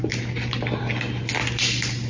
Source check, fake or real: real